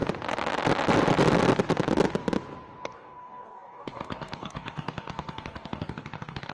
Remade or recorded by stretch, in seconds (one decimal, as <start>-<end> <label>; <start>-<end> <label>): 0.0-2.8 recorded; 2.8-6.5 remade